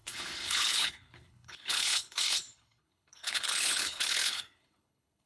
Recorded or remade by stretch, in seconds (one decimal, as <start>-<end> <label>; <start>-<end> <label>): 0.0-5.3 remade